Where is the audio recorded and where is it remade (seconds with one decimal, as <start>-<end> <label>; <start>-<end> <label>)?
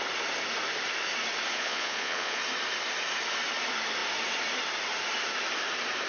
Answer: 0.0-1.5 recorded; 1.5-2.4 remade; 2.4-6.1 recorded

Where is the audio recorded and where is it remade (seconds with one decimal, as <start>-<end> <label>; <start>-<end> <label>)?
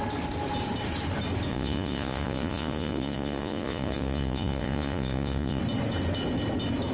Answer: 0.0-1.5 recorded; 1.5-5.6 remade; 5.6-6.9 recorded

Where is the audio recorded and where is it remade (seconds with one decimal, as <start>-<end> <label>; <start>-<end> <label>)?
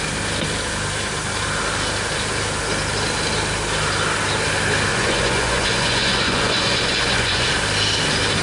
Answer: 0.0-4.9 recorded; 4.9-7.5 remade; 7.5-8.4 recorded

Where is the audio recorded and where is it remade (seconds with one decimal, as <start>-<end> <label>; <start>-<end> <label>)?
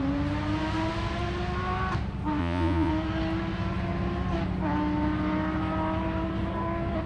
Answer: 0.0-2.4 recorded; 2.4-2.9 remade; 2.9-7.1 recorded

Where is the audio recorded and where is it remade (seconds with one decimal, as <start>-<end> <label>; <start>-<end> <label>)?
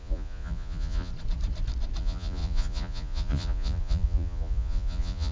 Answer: 0.0-1.1 remade; 1.1-2.0 recorded; 2.0-5.3 remade